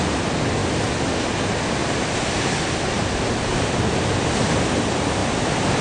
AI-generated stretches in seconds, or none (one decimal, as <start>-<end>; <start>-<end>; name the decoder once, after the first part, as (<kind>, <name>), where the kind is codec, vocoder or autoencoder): 5.2-5.8 (vocoder, BigVGAN v2)